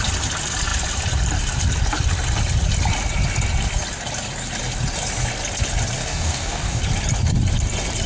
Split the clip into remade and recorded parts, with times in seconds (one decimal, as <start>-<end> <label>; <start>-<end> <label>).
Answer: 0.0-6.0 recorded; 6.0-6.8 remade; 6.8-8.1 recorded